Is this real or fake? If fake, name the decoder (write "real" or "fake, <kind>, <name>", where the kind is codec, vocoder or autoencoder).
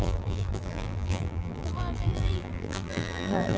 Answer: fake, vocoder, BigVGAN v2